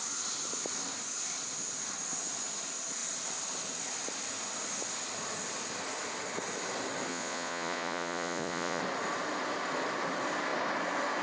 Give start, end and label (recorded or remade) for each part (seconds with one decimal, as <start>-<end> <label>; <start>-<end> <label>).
0.0-7.1 recorded; 7.1-8.8 remade; 8.8-11.2 recorded